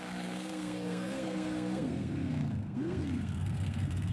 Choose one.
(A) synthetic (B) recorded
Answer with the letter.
A